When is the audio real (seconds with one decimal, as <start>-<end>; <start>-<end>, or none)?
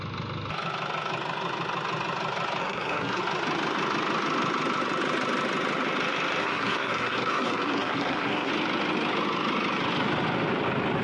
0.0-2.6; 3.2-6.4; 8.5-11.0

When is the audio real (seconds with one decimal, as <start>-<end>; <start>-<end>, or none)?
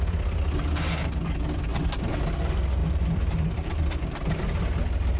0.0-1.7; 2.2-2.8; 4.4-5.2